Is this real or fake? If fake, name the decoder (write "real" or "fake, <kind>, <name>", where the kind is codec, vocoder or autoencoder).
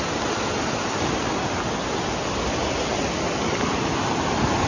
real